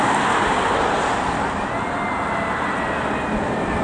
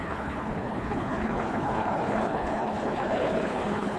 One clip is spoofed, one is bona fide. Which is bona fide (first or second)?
first